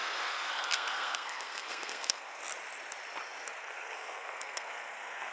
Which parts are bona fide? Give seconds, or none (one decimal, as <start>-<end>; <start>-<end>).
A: 2.4-3.6

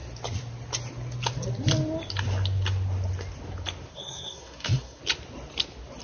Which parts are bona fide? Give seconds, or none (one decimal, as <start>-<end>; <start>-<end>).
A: 0.0-3.9; 5.0-6.0

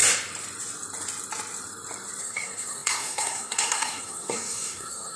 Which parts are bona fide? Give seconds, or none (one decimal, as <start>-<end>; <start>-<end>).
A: 0.0-2.2

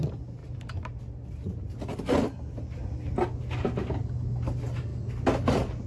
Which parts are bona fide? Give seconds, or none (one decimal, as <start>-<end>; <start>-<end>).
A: 0.0-5.9